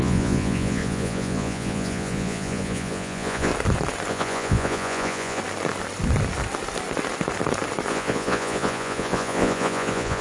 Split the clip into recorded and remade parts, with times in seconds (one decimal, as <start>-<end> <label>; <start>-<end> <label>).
0.0-3.5 remade; 3.5-4.1 recorded; 4.1-5.4 remade; 5.4-7.9 recorded; 7.9-10.2 remade